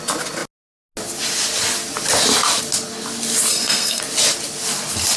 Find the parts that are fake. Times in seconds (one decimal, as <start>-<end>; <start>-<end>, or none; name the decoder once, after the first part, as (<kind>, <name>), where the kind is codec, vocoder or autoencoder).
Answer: 3.5-4.0 (codec, SNAC)